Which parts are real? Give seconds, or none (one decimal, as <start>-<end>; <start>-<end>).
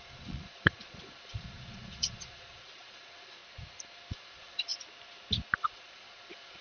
3.4-4.1; 4.7-5.6